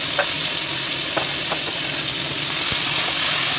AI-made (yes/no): no